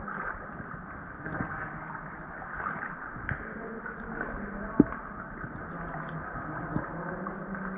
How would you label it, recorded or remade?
recorded